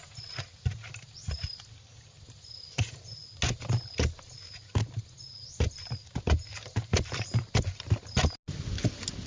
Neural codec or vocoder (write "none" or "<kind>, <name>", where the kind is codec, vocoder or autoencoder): none